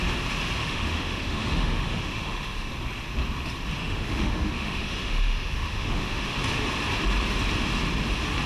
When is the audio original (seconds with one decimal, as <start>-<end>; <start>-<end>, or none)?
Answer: 0.0-0.6; 2.7-3.8; 6.3-8.5

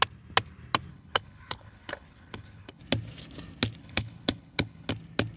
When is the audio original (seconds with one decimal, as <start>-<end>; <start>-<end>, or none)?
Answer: 0.0-0.9; 2.8-3.8; 4.9-5.4

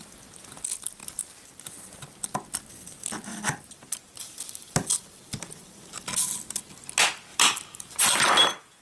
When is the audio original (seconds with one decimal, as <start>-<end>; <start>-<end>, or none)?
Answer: 0.0-3.3; 4.6-7.3; 8.0-8.8

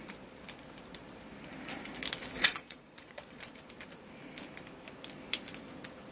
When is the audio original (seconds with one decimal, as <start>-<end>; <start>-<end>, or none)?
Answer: 0.0-2.4; 3.4-6.1